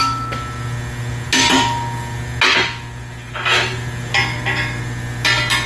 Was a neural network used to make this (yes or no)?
no